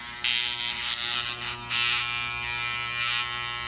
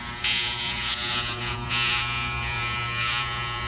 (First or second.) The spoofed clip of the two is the second